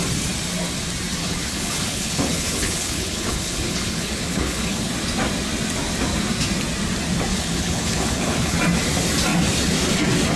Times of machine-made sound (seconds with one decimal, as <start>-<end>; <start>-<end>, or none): 1.2-4.9; 7.3-8.6